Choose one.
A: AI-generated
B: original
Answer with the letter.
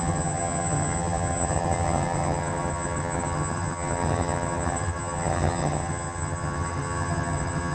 A